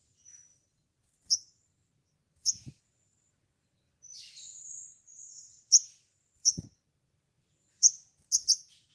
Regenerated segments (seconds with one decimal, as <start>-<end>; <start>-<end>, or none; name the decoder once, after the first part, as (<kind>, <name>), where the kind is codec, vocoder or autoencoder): 0.5-2.8 (vocoder, BigVGAN v2); 4.1-8.3